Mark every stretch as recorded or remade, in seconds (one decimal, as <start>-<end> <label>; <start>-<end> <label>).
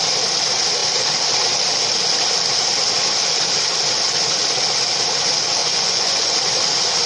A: 0.0-5.6 recorded; 5.6-6.4 remade; 6.4-7.1 recorded